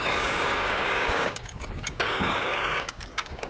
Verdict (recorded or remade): remade